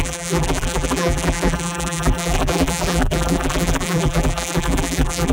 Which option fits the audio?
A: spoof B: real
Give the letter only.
A